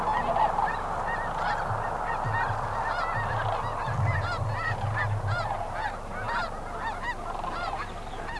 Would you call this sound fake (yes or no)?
no